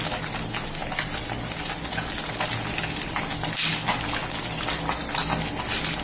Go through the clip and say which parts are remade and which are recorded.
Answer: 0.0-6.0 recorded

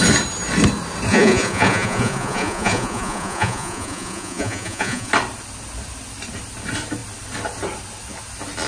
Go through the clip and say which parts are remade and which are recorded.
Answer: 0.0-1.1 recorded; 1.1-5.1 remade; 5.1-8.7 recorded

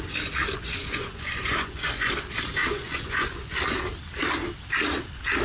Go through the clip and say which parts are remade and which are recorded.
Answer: 0.0-0.6 recorded; 0.6-2.1 remade; 2.1-2.6 recorded; 2.6-3.6 remade; 3.6-5.4 recorded

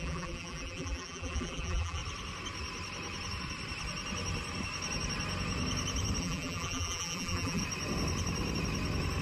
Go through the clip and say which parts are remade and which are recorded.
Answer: 0.0-2.0 remade; 2.0-6.2 recorded; 6.2-7.6 remade; 7.6-9.2 recorded

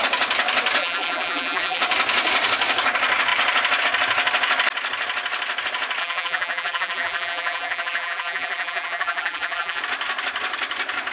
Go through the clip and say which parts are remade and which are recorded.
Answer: 0.0-0.8 recorded; 0.8-1.8 remade; 1.8-6.0 recorded; 6.0-9.8 remade; 9.8-11.1 recorded

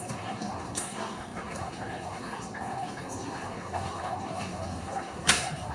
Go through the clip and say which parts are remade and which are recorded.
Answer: 0.0-5.7 remade

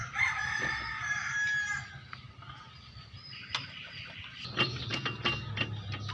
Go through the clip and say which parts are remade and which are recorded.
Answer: 0.0-6.1 recorded